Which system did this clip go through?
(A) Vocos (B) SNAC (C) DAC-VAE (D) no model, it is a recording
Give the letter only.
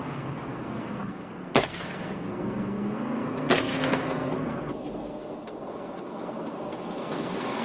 B